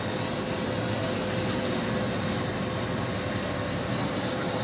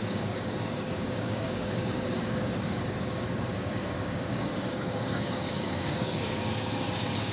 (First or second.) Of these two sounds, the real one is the first